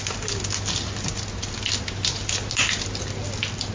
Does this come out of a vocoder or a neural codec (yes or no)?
no